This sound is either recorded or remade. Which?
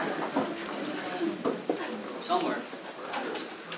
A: recorded